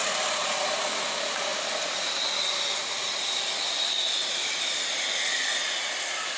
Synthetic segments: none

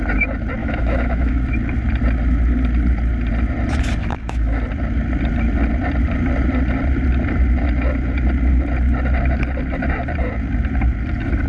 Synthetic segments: 0.6-1.4 (autoencoder, DAC-VAE); 4.0-4.6

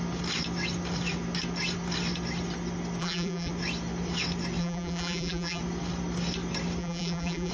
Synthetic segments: 3.0-3.5 (vocoder, BigVGAN v2); 4.6-5.6; 6.8-7.5

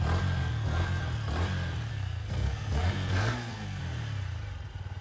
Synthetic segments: 0.4-1.0 (codec, SNAC); 1.9-3.8

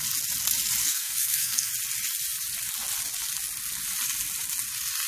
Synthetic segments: 0.8-1.7 (codec, SNAC)

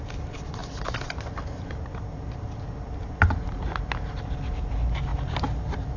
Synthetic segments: 0.6-4.2 (vocoder, BigVGAN v2); 5.1-6.0

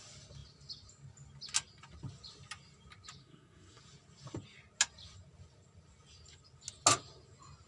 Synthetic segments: 3.2-3.8 (codec, SNAC)

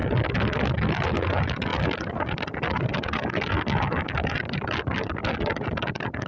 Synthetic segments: none